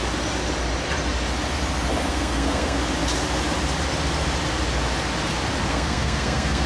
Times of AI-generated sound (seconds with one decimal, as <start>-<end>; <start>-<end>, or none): 2.1-2.8; 5.7-6.7